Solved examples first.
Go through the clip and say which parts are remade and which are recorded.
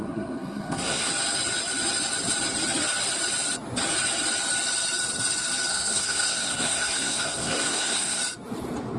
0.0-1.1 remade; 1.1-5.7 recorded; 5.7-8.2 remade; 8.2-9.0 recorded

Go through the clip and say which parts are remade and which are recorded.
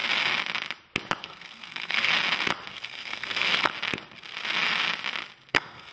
0.0-1.2 recorded; 1.2-2.1 remade; 2.1-2.7 recorded; 2.7-3.7 remade; 3.7-5.5 recorded; 5.5-5.9 remade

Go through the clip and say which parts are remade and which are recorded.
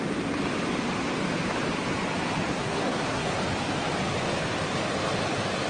0.0-2.5 recorded; 2.5-3.4 remade; 3.4-5.7 recorded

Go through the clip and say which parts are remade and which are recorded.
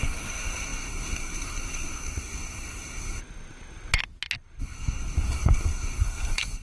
0.0-3.2 remade; 3.2-4.6 recorded; 4.6-6.6 remade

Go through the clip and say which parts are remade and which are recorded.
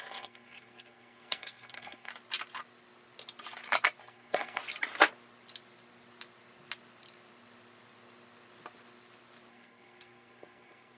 0.0-2.1 remade; 2.1-4.0 recorded; 4.0-4.6 remade; 4.6-9.5 recorded; 9.5-11.0 remade